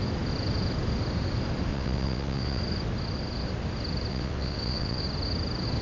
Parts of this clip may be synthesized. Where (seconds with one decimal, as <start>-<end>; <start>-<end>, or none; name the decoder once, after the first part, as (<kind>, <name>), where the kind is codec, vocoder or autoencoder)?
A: 1.7-2.6 (vocoder, WaveNeXt); 4.1-5.0